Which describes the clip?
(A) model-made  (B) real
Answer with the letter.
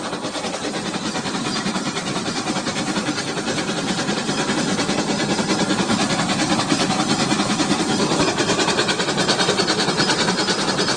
A